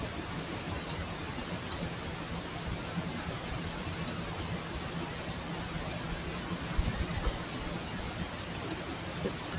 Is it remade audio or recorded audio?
recorded